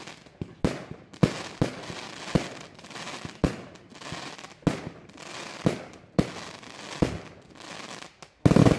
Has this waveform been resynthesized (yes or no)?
no